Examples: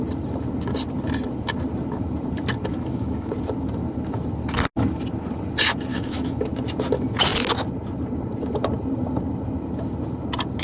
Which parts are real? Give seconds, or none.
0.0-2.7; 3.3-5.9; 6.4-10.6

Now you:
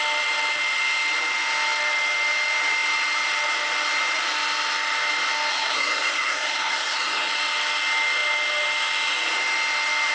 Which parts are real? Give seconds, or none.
0.0-5.5; 7.3-10.1